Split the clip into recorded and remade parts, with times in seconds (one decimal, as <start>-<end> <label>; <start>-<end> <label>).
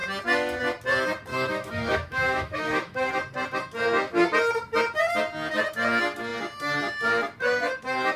0.0-1.3 recorded; 1.3-3.1 remade; 3.1-8.2 recorded